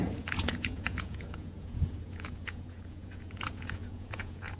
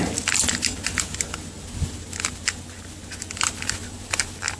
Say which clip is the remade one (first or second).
first